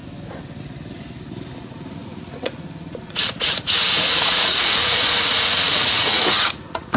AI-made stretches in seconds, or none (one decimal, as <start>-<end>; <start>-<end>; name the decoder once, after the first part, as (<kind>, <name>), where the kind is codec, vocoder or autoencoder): 1.6-7.0 (vocoder, Vocos)